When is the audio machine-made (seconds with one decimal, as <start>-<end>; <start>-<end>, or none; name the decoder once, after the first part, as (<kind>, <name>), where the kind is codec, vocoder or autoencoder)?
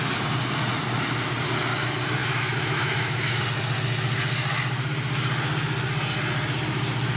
2.2-3.4 (autoencoder, DAC-VAE)